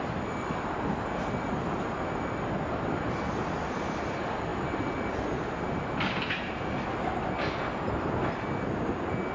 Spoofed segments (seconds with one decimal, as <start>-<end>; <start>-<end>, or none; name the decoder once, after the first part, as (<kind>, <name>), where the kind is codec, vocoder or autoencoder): none